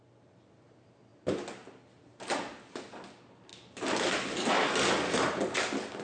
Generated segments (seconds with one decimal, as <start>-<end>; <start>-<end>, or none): none